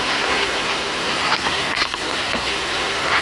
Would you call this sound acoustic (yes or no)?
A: no